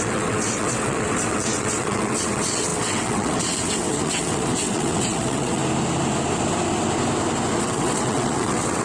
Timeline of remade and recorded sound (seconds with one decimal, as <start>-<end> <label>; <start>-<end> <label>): 0.0-5.6 remade; 5.6-7.6 recorded; 7.6-8.8 remade